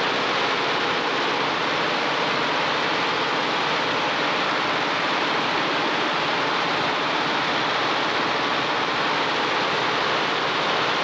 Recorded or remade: recorded